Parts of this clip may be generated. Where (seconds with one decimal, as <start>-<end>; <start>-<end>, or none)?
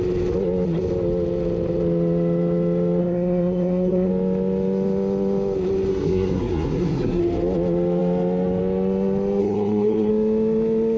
3.0-4.1; 5.9-7.2; 9.4-10.1